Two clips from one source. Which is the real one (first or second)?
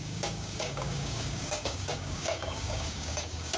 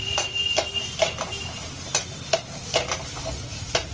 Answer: second